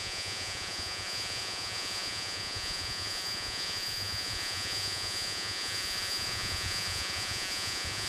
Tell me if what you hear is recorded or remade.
remade